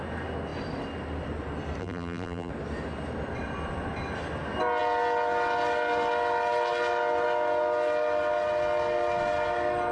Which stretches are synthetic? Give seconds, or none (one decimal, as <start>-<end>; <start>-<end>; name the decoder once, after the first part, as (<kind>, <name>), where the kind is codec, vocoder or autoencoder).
1.8-2.5 (vocoder, BigVGAN v2)